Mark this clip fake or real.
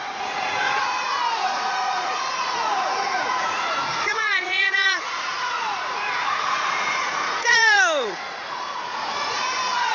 fake